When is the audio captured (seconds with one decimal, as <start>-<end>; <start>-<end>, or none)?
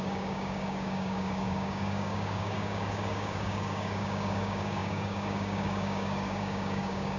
none